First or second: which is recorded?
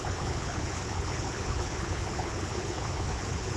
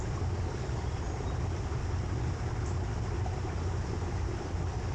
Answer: second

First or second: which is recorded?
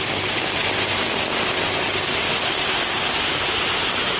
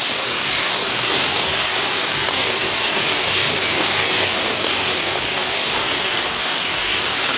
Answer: first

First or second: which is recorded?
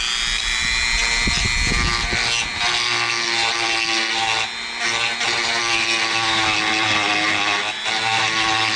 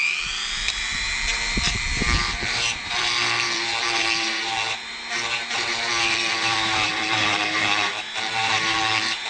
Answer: first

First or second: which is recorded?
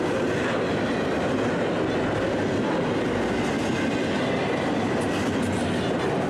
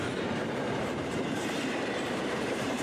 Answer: first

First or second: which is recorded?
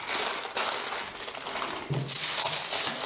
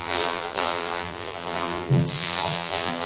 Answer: first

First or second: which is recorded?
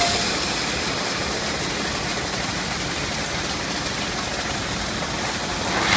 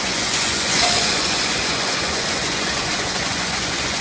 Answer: first